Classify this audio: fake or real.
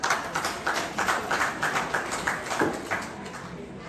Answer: real